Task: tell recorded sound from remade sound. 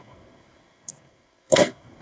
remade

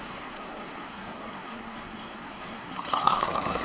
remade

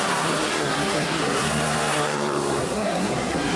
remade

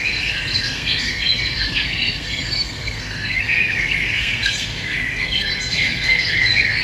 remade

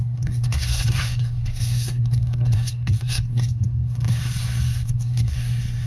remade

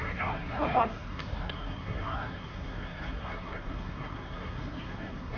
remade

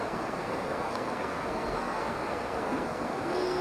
remade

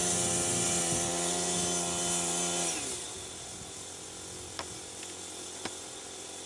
recorded